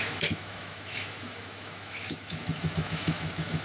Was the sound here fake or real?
fake